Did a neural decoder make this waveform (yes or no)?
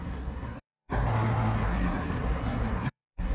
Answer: yes